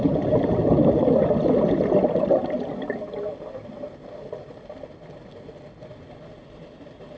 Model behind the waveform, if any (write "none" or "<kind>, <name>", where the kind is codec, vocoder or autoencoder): none